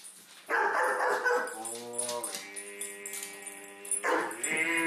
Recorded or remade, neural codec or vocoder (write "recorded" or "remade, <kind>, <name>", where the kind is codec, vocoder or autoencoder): recorded